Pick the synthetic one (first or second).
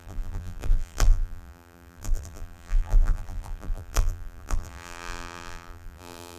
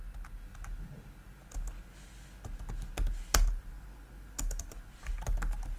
first